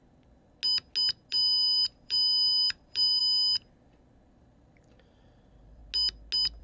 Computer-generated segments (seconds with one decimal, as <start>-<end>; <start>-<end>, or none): 1.3-3.2; 4.3-5.8